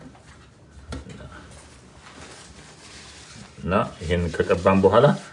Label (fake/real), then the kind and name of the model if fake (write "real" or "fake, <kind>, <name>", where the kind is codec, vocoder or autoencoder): real